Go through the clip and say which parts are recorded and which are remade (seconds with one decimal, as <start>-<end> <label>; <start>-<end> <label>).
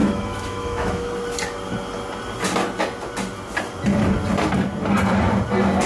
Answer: 0.0-1.1 remade; 1.1-5.9 recorded